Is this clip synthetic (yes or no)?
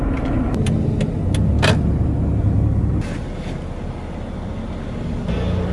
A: no